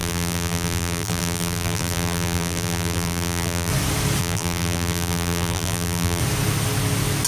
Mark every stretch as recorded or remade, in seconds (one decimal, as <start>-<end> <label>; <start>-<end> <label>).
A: 0.0-3.7 remade; 3.7-4.2 recorded; 4.2-6.2 remade; 6.2-7.3 recorded